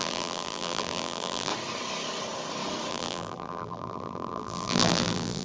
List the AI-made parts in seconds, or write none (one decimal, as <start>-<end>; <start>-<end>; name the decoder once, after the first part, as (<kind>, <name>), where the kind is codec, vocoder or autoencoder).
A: 0.0-1.5 (vocoder, BigVGAN v2); 2.9-5.4